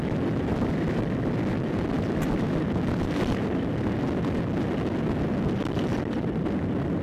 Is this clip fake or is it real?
fake